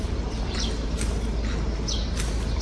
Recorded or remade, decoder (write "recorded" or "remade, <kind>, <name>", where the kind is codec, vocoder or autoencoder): recorded